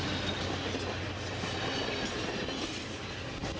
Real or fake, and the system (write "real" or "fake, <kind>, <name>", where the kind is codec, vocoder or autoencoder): real